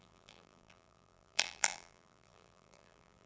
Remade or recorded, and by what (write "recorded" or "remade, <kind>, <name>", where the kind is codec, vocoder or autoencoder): remade, vocoder, BigVGAN v2